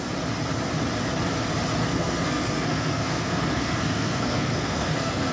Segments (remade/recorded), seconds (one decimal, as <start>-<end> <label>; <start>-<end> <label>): 0.0-1.8 recorded; 1.8-5.3 remade